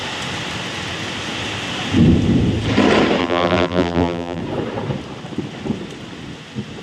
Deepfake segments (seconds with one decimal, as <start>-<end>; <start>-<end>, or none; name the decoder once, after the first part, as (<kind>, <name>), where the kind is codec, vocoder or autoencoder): 3.2-4.4 (vocoder, BigVGAN v2)